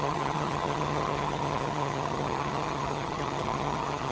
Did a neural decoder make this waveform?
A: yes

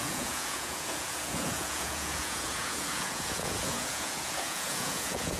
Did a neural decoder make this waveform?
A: yes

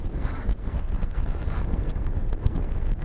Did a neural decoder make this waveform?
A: yes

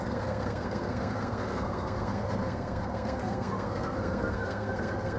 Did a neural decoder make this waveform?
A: yes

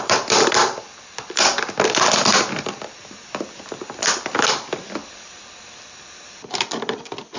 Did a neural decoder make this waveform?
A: yes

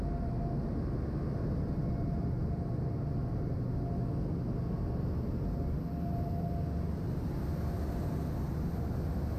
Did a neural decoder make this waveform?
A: no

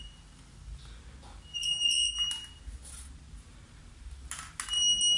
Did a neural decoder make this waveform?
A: no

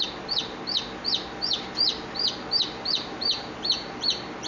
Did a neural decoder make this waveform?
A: no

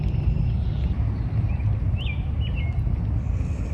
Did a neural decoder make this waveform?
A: no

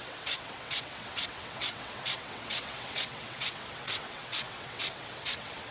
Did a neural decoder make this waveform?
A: yes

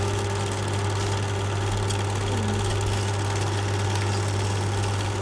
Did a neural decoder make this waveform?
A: no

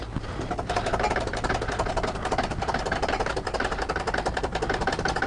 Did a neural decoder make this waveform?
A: no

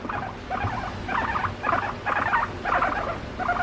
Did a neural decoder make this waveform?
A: no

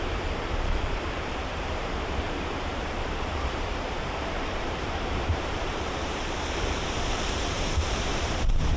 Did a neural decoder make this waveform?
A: yes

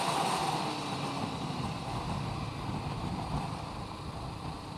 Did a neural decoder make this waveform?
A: no